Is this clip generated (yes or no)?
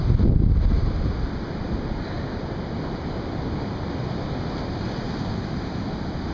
no